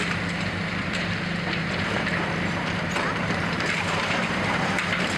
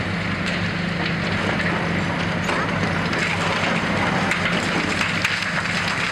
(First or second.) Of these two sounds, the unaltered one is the second